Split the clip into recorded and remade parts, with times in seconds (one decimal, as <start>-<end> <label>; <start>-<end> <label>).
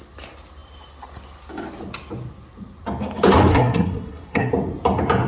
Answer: 0.0-3.5 recorded; 3.5-4.5 remade; 4.5-5.3 recorded